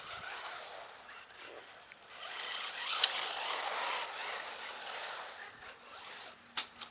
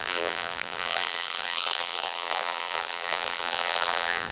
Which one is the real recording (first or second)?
first